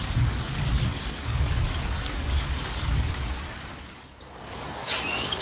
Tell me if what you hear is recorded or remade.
remade